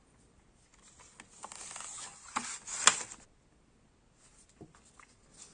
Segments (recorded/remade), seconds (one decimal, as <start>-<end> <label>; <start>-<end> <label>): 0.0-5.5 recorded